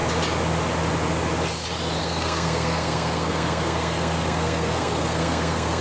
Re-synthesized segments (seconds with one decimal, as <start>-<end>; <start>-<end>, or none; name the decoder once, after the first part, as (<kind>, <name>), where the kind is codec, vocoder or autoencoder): 2.0-5.8 (codec, SNAC)